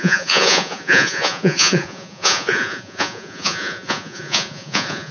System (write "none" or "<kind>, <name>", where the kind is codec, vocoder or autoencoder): vocoder, Vocos